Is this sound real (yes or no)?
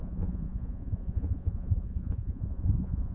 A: no